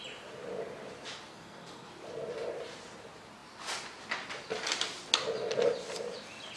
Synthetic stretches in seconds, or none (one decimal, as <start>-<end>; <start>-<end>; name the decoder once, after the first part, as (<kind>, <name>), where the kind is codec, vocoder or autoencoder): 1.3-1.9 (codec, SNAC)